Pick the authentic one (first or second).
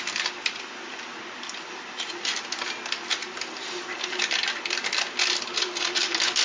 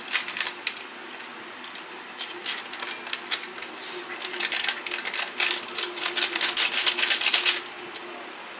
second